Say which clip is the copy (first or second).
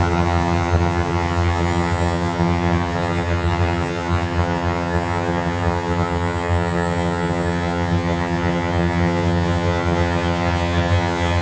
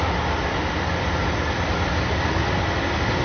first